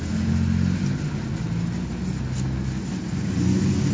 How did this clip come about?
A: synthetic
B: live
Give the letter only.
B